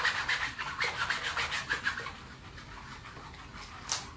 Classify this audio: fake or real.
real